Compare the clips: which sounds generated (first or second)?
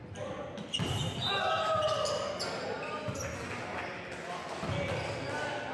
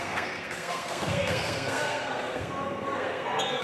second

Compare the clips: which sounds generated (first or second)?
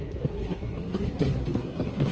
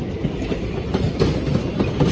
first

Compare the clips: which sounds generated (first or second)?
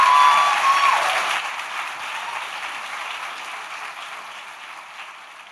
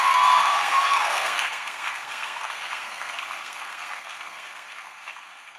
second